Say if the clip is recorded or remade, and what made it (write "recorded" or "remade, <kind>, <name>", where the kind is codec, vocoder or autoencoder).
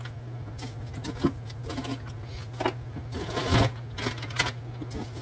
recorded